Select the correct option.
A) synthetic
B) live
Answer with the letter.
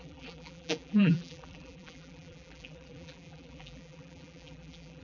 A